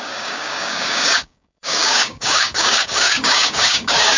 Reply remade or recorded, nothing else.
remade